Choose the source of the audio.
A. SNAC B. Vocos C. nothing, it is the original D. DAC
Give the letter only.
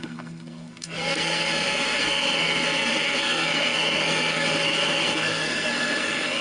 A